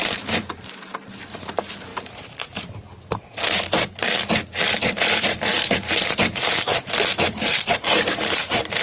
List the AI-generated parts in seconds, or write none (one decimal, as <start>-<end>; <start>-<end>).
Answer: 0.0-8.8